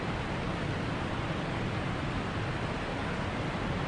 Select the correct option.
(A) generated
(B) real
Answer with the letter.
B